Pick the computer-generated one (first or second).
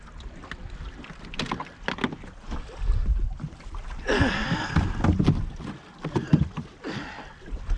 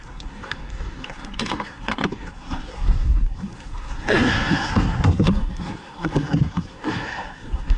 second